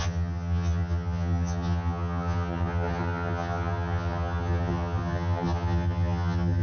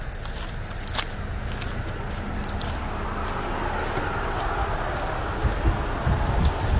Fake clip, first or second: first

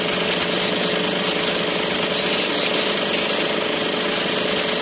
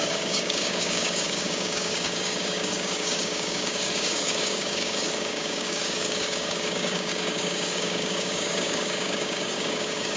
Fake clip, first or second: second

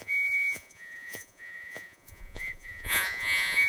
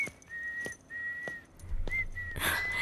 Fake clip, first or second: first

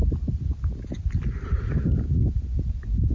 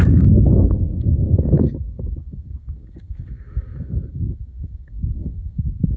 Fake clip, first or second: second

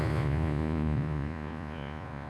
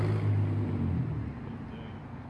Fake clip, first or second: first